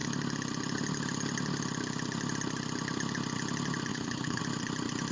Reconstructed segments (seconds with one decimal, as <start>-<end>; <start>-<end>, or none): 3.9-4.4